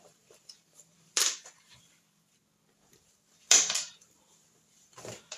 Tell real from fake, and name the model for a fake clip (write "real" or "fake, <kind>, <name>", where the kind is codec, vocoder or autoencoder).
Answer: fake, vocoder, BigVGAN v2